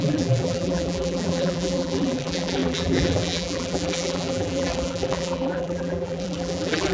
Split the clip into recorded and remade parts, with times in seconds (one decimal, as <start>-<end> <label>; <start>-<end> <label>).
0.0-6.9 remade